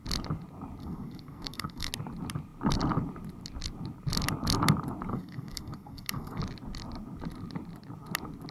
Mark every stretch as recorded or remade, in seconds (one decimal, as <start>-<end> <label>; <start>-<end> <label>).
0.0-0.8 recorded; 0.8-1.9 remade; 1.9-5.1 recorded; 5.1-6.4 remade; 6.4-8.5 recorded